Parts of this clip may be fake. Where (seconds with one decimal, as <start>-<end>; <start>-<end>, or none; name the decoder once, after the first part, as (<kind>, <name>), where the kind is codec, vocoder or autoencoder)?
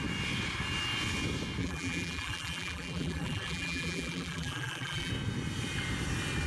1.6-5.1 (vocoder, BigVGAN v2)